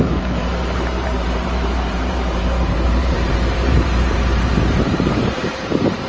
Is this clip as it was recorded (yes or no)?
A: no